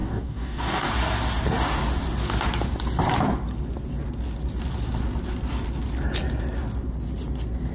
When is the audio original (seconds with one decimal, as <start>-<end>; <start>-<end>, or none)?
0.9-7.7